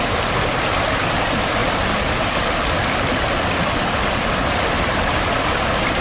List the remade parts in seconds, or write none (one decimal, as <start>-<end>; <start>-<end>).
1.6-5.2